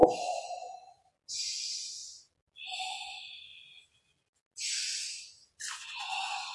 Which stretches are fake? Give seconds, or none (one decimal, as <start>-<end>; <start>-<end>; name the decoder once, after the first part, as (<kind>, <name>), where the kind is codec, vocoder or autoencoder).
none